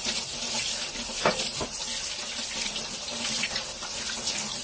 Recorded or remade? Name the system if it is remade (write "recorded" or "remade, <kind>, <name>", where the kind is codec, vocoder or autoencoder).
recorded